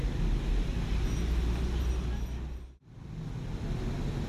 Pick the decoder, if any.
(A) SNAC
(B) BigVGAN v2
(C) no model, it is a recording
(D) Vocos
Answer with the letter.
C